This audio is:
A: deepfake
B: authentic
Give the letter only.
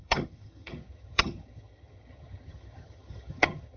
A